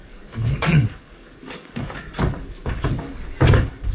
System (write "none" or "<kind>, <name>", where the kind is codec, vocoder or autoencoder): codec, DAC